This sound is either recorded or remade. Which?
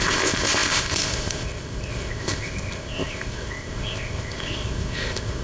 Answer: remade